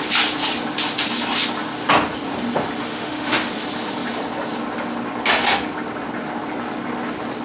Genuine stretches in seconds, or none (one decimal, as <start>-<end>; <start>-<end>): 0.0-2.8; 3.5-7.4